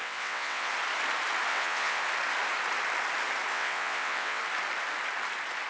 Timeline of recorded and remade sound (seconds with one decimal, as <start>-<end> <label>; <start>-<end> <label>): 0.0-0.7 remade; 0.7-1.5 recorded; 1.5-2.0 remade; 2.0-3.5 recorded; 3.5-4.4 remade; 4.4-5.7 recorded